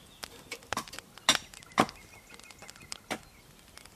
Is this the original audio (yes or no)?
yes